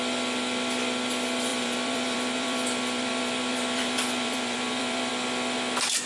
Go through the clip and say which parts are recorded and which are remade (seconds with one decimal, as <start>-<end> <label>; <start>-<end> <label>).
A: 0.0-1.5 recorded; 1.5-5.1 remade; 5.1-6.1 recorded